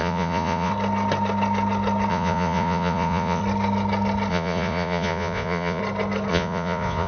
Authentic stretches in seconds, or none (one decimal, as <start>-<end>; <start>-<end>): 0.7-2.1; 3.4-4.3; 5.8-6.3